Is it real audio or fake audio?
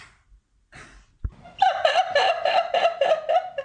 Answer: real